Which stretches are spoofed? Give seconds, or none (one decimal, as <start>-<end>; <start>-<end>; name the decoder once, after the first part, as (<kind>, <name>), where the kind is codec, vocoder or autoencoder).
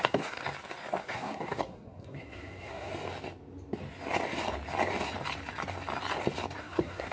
0.0-0.4 (codec, SNAC); 1.0-2.9; 6.6-7.1